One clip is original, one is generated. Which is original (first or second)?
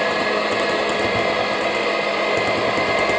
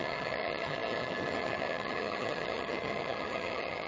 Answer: first